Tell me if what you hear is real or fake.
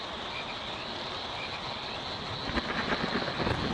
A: real